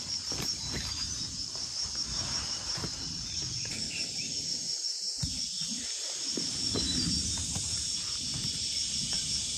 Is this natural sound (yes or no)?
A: no